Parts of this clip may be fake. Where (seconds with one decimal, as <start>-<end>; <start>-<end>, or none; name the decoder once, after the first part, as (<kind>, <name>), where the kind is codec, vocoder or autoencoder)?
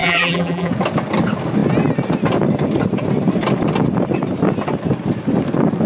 0.0-0.7 (vocoder, BigVGAN v2)